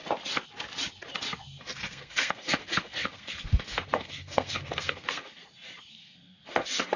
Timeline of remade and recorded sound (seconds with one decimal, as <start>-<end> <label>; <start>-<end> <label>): 0.0-1.6 recorded; 1.6-5.4 remade; 5.4-5.9 recorded; 5.9-7.0 remade